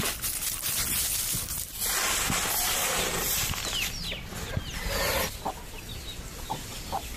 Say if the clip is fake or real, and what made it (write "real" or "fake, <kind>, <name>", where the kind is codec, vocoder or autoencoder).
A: real